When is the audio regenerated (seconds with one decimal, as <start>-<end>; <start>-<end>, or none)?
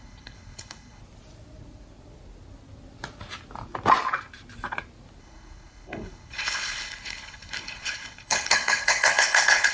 0.0-1.0; 5.2-9.7